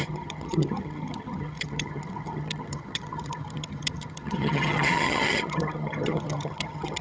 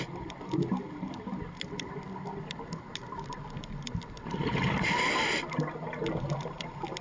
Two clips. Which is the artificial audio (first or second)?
first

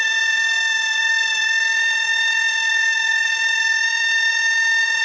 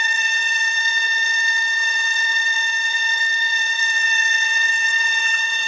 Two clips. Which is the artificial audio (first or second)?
second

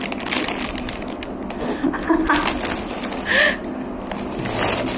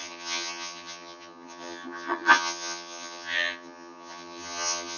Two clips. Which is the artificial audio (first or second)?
second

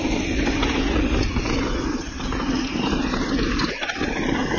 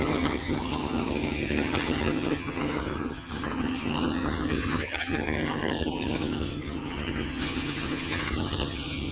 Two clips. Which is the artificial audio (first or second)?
second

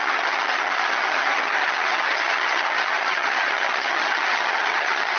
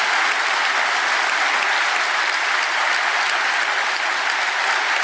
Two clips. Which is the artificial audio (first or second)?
first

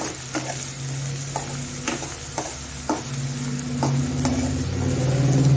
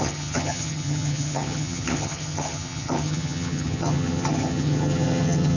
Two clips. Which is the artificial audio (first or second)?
second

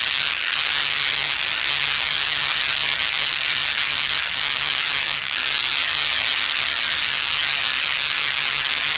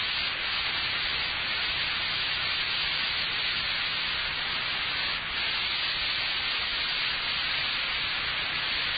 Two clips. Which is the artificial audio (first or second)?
first